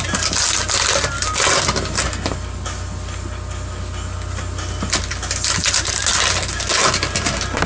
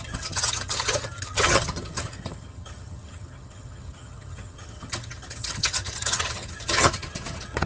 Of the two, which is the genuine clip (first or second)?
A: first